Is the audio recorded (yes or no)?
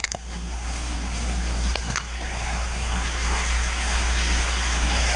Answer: no